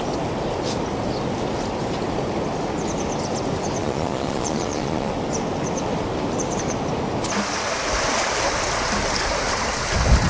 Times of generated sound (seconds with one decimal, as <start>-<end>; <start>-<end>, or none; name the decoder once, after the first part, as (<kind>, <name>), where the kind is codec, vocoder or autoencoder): 3.8-5.1 (vocoder, Vocos)